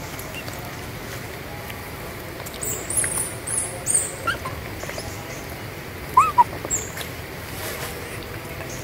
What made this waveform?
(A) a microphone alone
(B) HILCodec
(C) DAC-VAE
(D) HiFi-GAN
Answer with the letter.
A